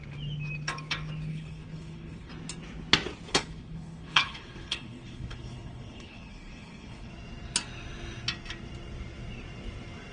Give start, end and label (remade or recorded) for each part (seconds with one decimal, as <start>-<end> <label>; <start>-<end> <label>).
0.0-1.3 recorded; 1.3-2.3 remade; 2.3-3.3 recorded; 3.3-7.1 remade; 7.1-10.1 recorded